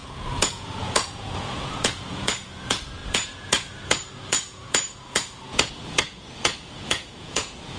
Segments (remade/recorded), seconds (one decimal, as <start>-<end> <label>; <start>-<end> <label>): 0.0-7.8 remade